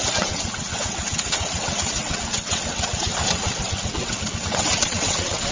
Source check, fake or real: fake